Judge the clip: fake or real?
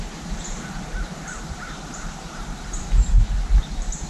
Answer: fake